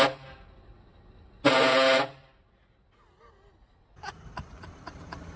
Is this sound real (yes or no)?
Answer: yes